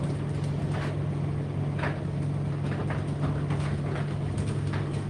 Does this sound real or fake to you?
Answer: real